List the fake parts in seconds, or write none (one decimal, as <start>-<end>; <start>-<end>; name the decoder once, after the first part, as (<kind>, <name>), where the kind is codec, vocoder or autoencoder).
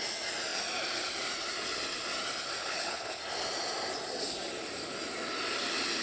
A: 2.6-3.2 (codec, HILCodec)